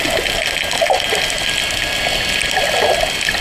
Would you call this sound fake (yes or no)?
no